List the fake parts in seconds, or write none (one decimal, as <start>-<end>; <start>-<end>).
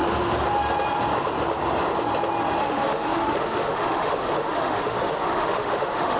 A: 2.6-6.2